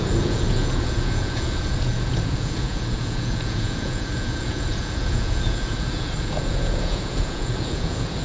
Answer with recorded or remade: remade